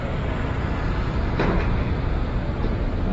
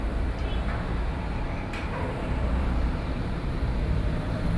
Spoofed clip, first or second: second